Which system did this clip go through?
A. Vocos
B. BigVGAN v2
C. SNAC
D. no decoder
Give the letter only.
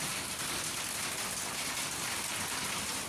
D